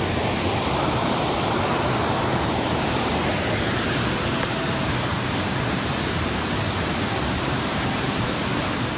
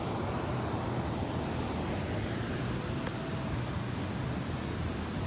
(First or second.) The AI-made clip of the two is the first